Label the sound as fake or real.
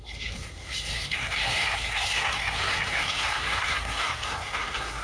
fake